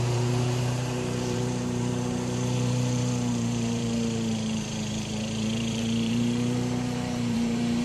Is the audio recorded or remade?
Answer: remade